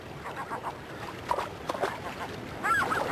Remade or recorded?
remade